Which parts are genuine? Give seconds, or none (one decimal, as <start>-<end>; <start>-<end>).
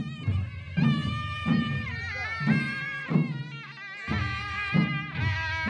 3.4-5.7